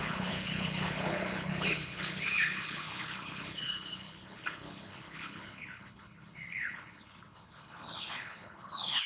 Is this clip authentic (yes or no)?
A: no